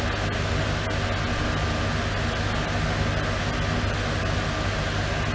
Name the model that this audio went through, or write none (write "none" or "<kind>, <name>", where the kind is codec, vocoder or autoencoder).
none